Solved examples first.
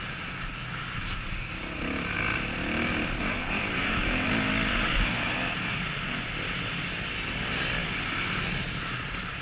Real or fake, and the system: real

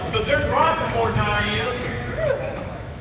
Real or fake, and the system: fake, autoencoder, DAC-VAE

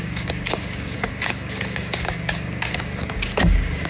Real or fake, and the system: fake, codec, DAC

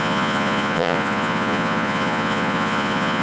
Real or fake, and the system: fake, vocoder, Vocos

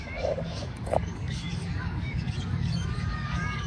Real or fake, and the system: fake, codec, DAC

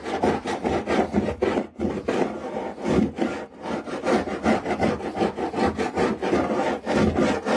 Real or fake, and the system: real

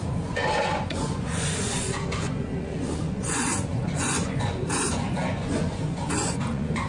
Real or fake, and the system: fake, vocoder, Vocos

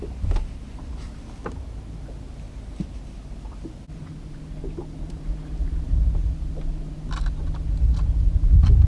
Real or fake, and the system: real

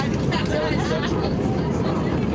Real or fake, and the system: real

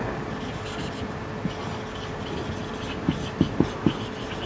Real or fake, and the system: real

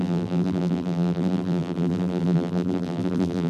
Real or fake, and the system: fake, vocoder, BigVGAN v2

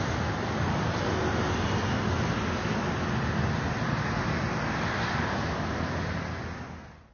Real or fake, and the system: real